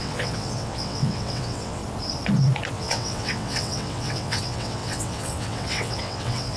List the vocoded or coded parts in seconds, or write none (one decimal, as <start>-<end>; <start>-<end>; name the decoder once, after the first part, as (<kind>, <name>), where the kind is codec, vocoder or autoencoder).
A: 0.0-1.8 (vocoder, WaveNeXt); 2.7-6.6